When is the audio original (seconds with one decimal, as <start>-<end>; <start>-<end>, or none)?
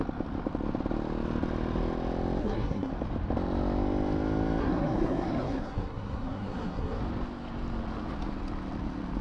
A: 0.0-2.4; 2.9-4.6; 7.0-9.2